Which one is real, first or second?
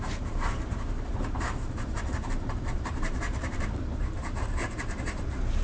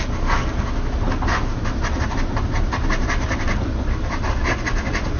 second